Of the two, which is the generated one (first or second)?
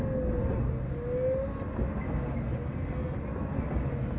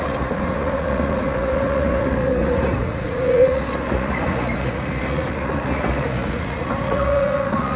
second